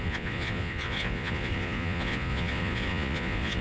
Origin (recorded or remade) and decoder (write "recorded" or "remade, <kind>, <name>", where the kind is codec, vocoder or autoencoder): remade, vocoder, Vocos